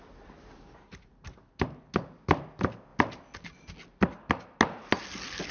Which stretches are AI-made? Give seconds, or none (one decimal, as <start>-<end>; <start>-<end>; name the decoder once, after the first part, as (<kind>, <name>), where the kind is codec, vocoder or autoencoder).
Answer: none